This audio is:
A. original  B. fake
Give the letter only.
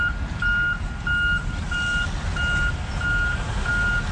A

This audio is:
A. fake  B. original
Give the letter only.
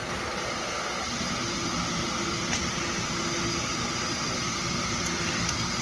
B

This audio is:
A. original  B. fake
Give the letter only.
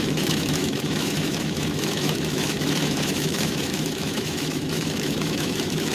B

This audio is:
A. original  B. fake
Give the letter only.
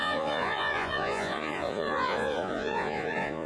B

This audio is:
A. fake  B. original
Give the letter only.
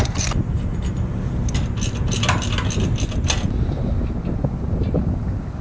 B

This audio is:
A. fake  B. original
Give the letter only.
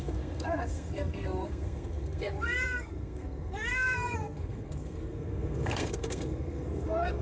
A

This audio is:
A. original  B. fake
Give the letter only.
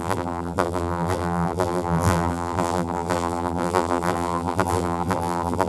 B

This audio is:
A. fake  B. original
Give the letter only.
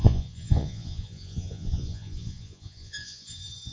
A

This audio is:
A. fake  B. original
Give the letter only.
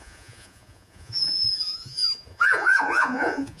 A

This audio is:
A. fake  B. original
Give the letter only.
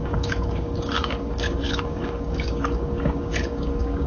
A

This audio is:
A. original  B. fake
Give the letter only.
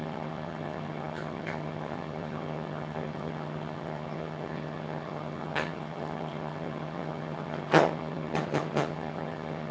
B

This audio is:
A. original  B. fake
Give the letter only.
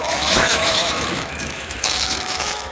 B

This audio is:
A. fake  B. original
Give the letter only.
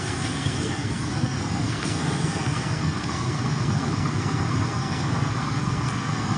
A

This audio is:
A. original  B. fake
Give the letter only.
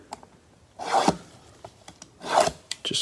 A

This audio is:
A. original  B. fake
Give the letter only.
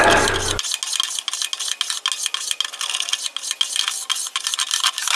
A